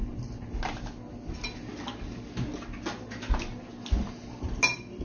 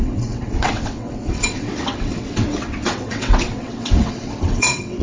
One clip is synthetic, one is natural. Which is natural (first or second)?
first